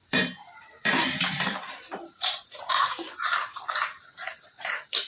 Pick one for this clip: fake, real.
fake